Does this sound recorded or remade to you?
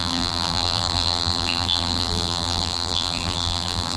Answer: remade